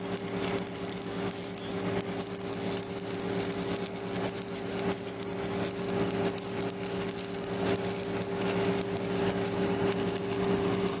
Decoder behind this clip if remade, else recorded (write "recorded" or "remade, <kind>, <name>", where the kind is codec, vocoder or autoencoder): recorded